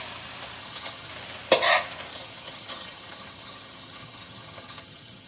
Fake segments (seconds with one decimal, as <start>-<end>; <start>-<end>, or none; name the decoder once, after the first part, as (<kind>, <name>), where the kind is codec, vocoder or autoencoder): 0.6-1.1 (vocoder, HiFi-GAN); 2.1-5.3

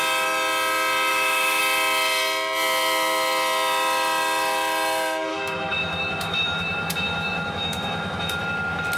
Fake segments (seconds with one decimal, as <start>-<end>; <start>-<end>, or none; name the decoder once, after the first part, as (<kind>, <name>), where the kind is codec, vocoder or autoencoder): 1.1-1.6 (autoencoder, DAC-VAE); 5.3-8.4

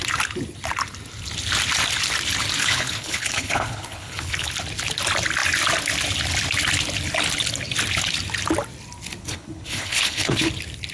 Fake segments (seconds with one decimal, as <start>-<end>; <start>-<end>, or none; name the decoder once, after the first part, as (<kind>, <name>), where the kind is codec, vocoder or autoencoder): 2.6-4.5 (codec, HILCodec); 9.2-10.5

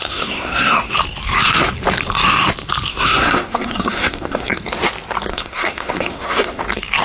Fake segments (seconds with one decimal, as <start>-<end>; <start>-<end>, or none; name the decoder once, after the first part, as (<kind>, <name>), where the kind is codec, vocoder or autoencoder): 0.0-0.9 (codec, SNAC); 2.9-4.5; 5.3-6.6

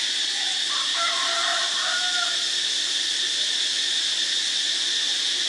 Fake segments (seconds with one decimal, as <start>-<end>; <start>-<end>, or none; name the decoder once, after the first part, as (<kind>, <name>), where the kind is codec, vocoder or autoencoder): none

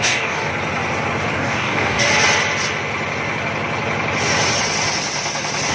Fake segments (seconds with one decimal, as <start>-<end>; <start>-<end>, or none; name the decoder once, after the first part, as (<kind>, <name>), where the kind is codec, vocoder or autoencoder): 0.0-0.5 (codec, DAC); 1.3-2.1

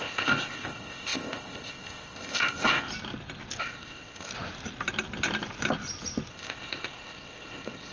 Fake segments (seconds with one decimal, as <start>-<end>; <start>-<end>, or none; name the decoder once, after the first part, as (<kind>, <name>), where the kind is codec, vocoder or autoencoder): 0.0-2.9 (codec, ZipCodec); 3.6-4.3; 6.3-7.9

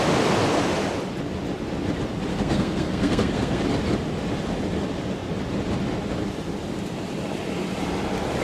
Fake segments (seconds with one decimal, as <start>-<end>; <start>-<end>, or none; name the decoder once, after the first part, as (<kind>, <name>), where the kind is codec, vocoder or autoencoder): 2.3-3.6 (codec, SNAC)